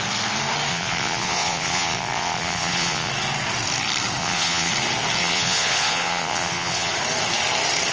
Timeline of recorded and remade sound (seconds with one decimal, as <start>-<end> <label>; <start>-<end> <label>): 0.0-0.7 recorded; 0.7-3.1 remade; 3.1-4.2 recorded; 4.2-4.7 remade; 4.7-5.2 recorded; 5.2-6.9 remade; 6.9-7.9 recorded